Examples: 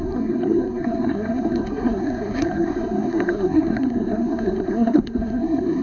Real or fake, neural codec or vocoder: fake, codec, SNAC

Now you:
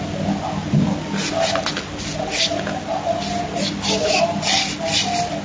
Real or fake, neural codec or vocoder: real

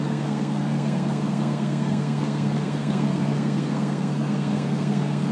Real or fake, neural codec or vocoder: fake, codec, SNAC